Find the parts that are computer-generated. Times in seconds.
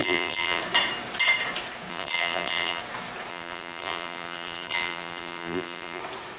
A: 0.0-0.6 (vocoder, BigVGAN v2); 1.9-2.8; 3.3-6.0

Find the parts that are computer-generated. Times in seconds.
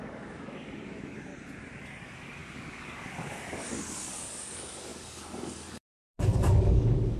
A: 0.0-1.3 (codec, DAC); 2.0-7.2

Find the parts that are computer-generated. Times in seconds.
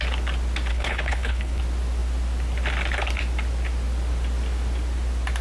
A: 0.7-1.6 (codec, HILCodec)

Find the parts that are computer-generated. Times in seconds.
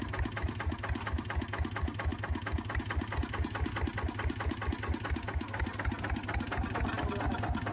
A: none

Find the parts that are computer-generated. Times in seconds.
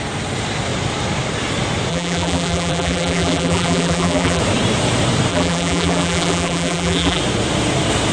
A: 1.9-4.4 (vocoder, BigVGAN v2); 5.3-7.2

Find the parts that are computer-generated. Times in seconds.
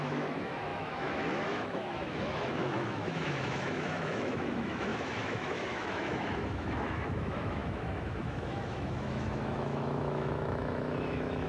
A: 0.0-11.5 (autoencoder, DAC-VAE)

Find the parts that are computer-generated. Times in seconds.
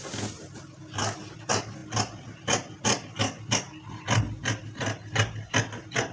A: none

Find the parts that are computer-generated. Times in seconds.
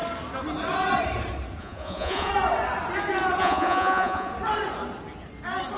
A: 1.6-2.3 (vocoder, Vocos); 3.4-4.3